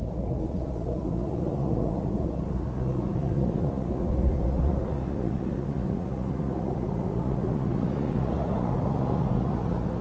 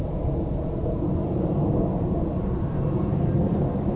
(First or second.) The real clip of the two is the second